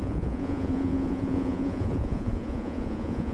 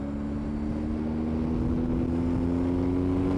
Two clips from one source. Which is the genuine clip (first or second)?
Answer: second